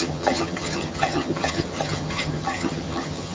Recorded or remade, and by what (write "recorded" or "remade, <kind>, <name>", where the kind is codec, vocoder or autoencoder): remade, vocoder, HiFi-GAN